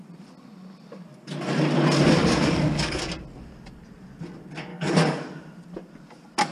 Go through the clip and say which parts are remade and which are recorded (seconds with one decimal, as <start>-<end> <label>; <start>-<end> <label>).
0.0-2.2 recorded; 2.2-3.0 remade; 3.0-4.7 recorded; 4.7-5.4 remade; 5.4-6.5 recorded